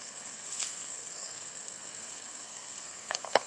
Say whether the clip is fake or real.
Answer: fake